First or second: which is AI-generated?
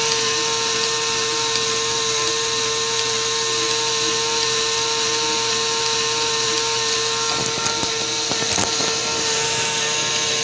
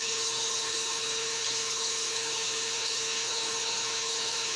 second